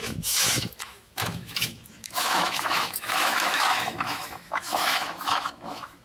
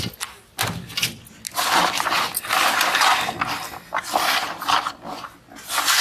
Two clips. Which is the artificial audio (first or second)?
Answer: first